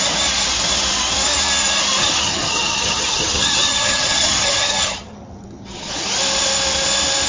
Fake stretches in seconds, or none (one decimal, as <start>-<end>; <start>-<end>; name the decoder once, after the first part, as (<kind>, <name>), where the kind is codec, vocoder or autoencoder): 2.0-5.9 (vocoder, HiFi-GAN)